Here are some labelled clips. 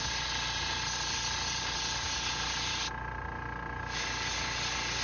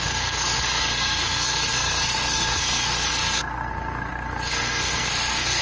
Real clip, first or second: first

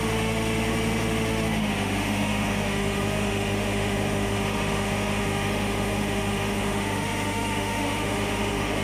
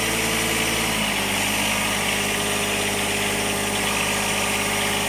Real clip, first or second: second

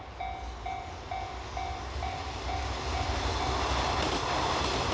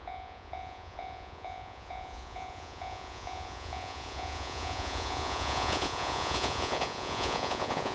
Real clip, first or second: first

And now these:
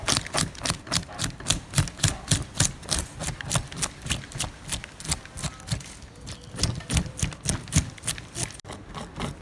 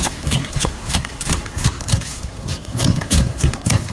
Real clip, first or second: first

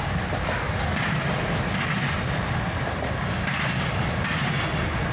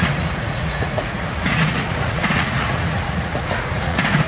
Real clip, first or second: first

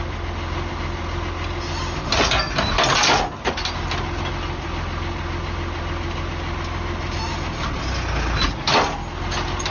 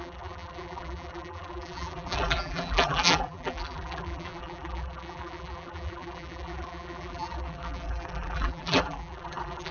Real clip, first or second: first